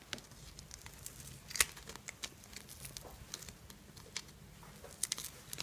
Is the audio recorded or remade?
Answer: recorded